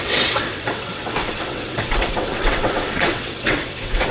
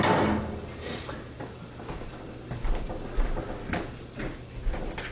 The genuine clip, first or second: second